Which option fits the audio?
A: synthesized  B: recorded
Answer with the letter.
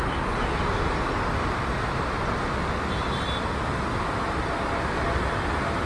B